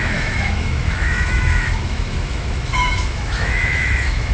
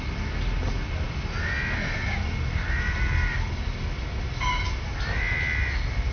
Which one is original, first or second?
second